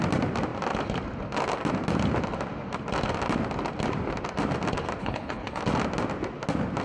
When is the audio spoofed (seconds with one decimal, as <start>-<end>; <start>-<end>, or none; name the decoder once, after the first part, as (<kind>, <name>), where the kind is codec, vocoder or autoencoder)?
5.0-5.6 (codec, HILCodec)

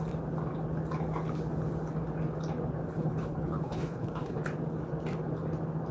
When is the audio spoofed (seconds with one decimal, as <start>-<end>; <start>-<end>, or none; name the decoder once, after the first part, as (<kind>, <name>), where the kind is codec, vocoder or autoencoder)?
2.9-4.4 (codec, HILCodec)

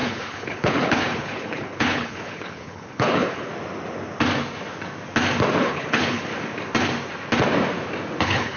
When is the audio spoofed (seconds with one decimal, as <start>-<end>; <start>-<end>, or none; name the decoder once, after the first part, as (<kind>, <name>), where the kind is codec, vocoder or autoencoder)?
0.0-3.5 (codec, HILCodec); 5.6-6.3; 8.2-8.6

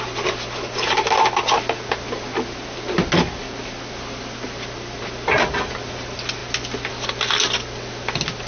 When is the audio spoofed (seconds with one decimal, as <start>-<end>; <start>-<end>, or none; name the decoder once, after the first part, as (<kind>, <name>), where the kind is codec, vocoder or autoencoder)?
none

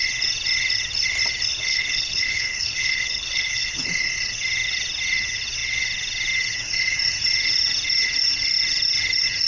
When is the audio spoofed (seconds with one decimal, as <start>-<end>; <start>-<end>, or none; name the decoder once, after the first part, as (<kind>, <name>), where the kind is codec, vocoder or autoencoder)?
1.5-3.8 (codec, HILCodec)

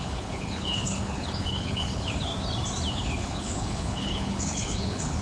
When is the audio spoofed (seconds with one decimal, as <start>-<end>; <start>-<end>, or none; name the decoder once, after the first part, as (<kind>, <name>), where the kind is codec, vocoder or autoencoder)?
0.0-2.3 (codec, HILCodec); 2.9-5.2

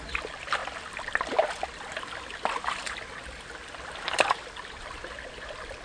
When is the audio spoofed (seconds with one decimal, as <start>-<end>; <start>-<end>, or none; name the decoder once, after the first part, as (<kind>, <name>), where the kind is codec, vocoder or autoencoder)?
none

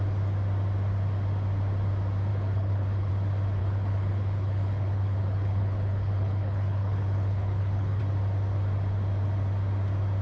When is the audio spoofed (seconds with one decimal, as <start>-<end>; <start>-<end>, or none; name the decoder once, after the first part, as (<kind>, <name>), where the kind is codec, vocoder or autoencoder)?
2.3-3.1 (codec, HILCodec); 3.6-8.0